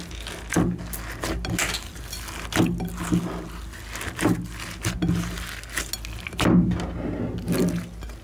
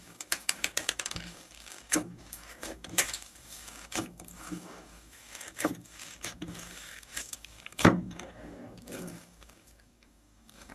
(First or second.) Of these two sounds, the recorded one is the first